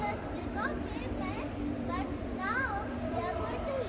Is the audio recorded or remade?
remade